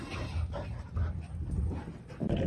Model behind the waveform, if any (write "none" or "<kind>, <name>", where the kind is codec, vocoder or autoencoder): none